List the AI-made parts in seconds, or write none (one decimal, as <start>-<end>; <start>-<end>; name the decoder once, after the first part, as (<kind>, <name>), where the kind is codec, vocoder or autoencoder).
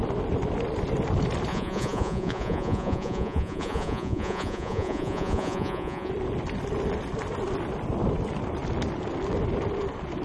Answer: 1.5-6.1 (vocoder, Vocos)